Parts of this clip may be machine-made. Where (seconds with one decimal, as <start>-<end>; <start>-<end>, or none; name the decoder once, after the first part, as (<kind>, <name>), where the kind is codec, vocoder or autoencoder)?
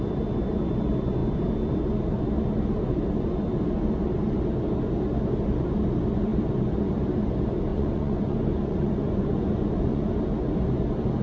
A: 7.7-10.1 (vocoder, Vocos)